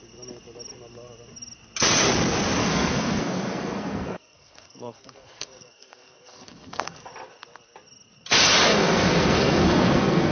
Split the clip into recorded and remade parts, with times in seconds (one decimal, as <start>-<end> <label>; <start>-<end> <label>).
0.0-2.6 recorded; 2.6-7.1 remade; 7.1-8.7 recorded; 8.7-10.3 remade